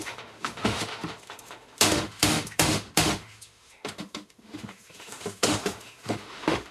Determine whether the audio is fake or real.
fake